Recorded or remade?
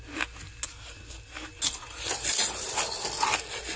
recorded